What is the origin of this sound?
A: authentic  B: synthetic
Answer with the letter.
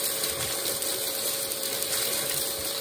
B